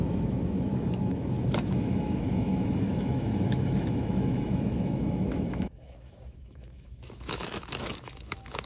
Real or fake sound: fake